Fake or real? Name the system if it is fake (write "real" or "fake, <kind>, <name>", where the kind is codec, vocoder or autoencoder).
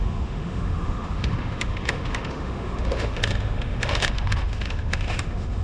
fake, autoencoder, DAC-VAE